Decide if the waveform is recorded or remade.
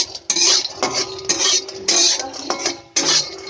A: recorded